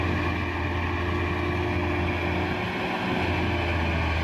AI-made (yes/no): no